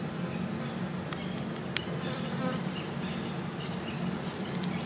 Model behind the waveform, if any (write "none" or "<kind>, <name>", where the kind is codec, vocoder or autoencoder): none